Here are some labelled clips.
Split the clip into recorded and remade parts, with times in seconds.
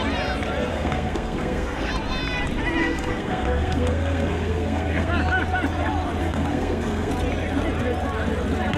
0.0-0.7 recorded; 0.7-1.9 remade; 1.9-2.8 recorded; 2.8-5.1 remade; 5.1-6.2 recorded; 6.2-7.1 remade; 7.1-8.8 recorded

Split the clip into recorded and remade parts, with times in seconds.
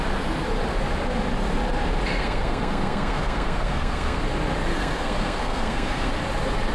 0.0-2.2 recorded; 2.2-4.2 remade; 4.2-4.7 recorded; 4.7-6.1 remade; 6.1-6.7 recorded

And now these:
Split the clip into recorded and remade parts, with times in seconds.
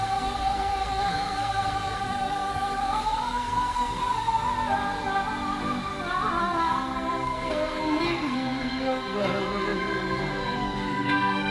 0.0-4.0 remade; 4.0-6.4 recorded; 6.4-11.5 remade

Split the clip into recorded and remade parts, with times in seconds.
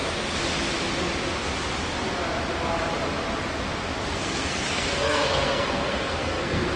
0.0-4.1 recorded; 4.1-6.8 remade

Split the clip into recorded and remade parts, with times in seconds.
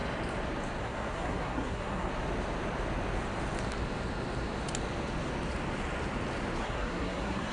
0.0-0.8 recorded; 0.8-2.1 remade; 2.1-6.6 recorded; 6.6-7.5 remade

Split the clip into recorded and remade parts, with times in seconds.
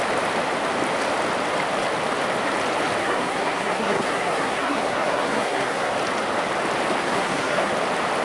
0.0-3.0 recorded; 3.0-5.9 remade; 5.9-7.0 recorded; 7.0-7.7 remade; 7.7-8.2 recorded